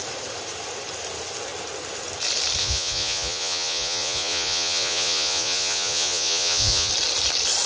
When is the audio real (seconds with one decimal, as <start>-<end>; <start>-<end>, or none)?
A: 0.0-2.6; 6.9-7.7